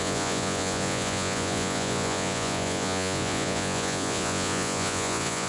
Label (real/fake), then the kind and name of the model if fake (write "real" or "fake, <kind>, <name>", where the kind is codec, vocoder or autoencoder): fake, vocoder, Vocos